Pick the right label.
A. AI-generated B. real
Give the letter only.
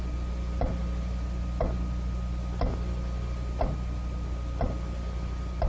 B